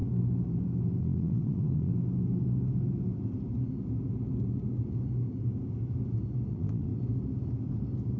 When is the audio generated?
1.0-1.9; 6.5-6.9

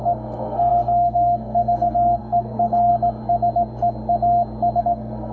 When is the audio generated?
0.0-2.9; 4.8-5.3

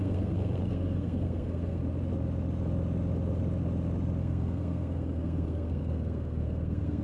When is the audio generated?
0.0-1.8; 4.2-7.0